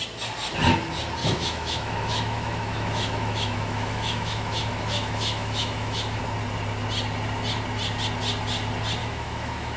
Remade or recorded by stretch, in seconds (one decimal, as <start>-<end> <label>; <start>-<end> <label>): 0.0-1.2 recorded; 1.2-6.2 remade; 6.2-9.0 recorded; 9.0-9.8 remade